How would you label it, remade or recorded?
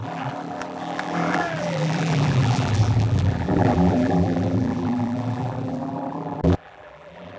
remade